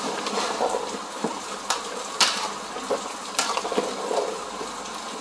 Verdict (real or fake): real